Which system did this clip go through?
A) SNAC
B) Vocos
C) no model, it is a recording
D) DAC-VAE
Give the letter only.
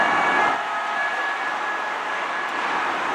C